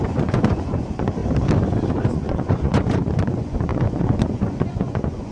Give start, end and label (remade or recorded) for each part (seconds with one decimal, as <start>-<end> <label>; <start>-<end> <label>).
0.0-1.2 remade; 1.2-1.9 recorded; 1.9-5.3 remade